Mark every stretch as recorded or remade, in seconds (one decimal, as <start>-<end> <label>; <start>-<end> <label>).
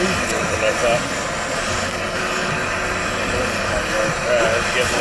0.0-5.0 recorded